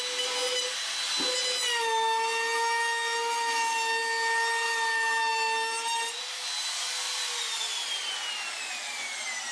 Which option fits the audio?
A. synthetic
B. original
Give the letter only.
B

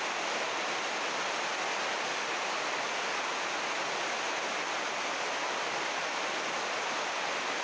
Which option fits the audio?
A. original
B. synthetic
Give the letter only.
A